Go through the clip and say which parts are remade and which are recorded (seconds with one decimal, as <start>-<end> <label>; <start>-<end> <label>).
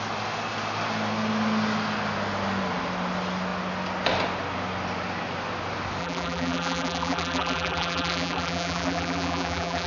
0.0-6.0 recorded; 6.0-9.9 remade